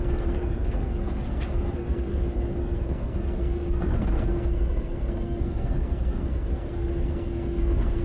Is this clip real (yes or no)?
no